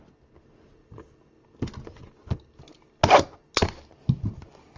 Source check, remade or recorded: recorded